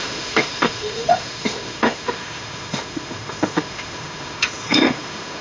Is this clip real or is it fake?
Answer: fake